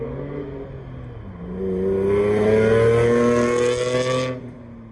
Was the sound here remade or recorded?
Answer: recorded